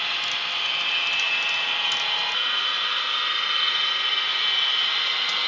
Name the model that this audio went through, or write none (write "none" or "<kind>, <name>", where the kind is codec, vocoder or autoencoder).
none